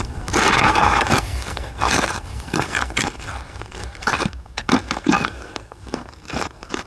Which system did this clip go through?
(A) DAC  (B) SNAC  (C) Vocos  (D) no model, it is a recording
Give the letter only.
B